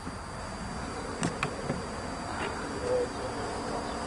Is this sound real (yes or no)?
yes